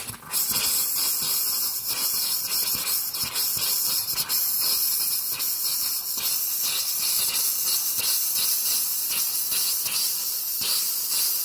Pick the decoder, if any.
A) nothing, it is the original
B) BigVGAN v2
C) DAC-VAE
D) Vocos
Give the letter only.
A